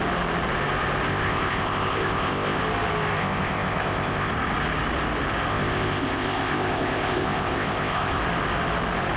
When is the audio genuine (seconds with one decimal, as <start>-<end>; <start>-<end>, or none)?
0.0-1.1; 2.6-3.2; 4.3-5.5; 8.2-9.2